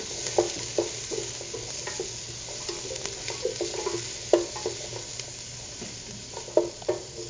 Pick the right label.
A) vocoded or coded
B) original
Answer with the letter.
B